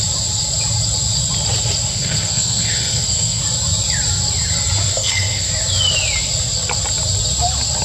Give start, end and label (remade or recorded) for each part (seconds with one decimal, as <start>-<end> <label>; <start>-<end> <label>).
0.0-1.9 recorded; 1.9-3.4 remade; 3.4-4.9 recorded; 4.9-5.5 remade; 5.5-7.8 recorded